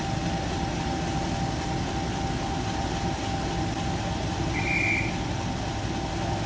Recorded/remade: recorded